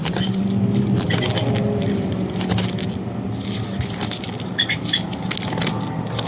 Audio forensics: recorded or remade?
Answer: recorded